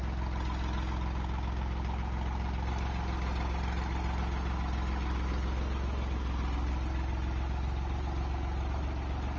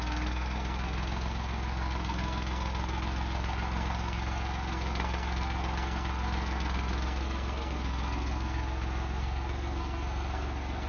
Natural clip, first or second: first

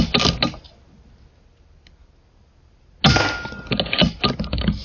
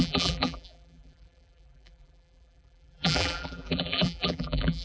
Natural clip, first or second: first